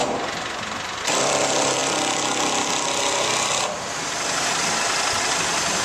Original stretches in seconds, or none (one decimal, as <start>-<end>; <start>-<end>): 1.8-5.3

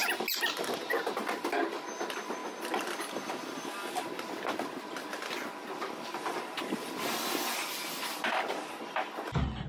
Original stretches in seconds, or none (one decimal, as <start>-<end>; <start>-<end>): 0.8-5.6; 6.6-9.7

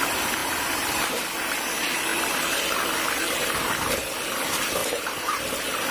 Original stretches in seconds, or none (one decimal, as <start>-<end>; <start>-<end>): 0.0-0.4; 1.1-4.8; 5.4-5.9

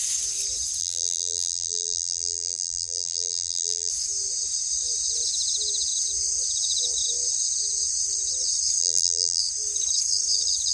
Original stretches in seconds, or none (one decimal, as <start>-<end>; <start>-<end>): 0.0-0.8; 3.9-8.8; 9.4-10.7

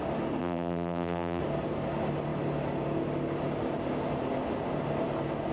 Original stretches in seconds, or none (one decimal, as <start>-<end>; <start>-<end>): 0.0-0.4; 1.4-5.5

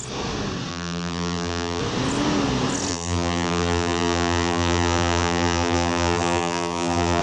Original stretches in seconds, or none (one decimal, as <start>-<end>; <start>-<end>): 0.0-0.7; 1.8-2.9

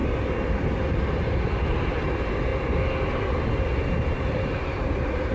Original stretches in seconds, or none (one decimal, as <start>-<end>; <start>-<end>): 0.0-1.0; 2.5-3.8